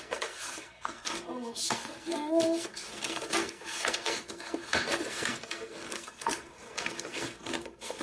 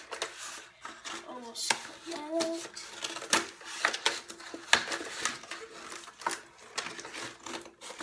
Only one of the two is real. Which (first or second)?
second